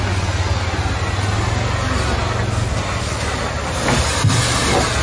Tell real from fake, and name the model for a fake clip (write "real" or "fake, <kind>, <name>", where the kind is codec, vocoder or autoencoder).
real